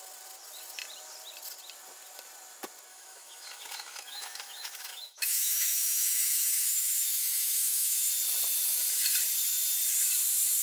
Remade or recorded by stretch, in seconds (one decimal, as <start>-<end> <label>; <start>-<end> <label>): 0.0-2.9 recorded; 2.9-8.1 remade; 8.1-10.6 recorded